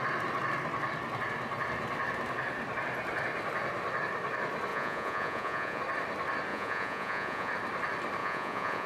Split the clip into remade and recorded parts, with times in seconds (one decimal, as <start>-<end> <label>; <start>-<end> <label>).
0.0-4.7 recorded; 4.7-5.8 remade; 5.8-6.5 recorded; 6.5-7.5 remade; 7.5-8.2 recorded; 8.2-8.9 remade